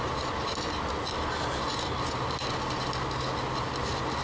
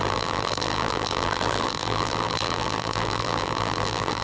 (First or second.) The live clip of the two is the first